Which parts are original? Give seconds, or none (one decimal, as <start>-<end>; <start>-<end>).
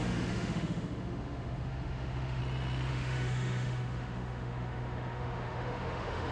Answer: 2.4-2.9